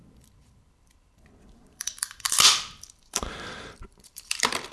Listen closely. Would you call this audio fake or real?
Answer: fake